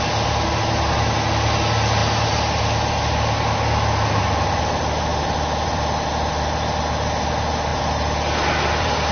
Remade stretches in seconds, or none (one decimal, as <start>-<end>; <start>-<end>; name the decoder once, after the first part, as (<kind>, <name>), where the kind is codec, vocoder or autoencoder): 5.1-6.1 (vocoder, BigVGAN v2); 7.7-9.1